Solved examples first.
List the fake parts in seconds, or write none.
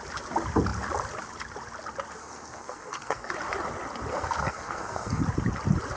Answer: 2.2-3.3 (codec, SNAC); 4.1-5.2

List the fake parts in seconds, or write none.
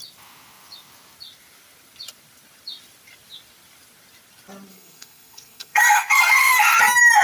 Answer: 4.7-6.8 (codec, SNAC)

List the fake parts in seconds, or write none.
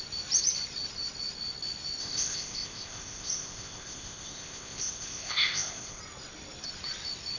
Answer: 2.0-6.0 (codec, ZipCodec)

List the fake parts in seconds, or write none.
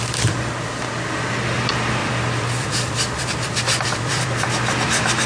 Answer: 2.0-5.3 (vocoder, BigVGAN v2)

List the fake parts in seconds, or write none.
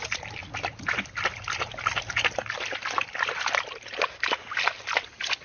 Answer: none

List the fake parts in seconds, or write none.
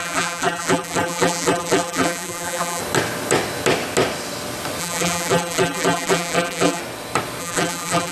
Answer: 0.0-2.8 (vocoder, BigVGAN v2); 4.8-6.8; 7.4-8.1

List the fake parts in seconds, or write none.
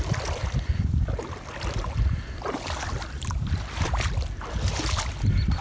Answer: none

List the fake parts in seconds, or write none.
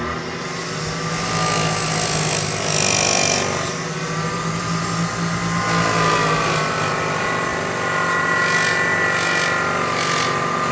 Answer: none